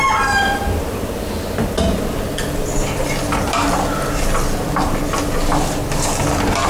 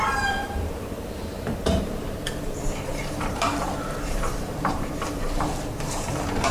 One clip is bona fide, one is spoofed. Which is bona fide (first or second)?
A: first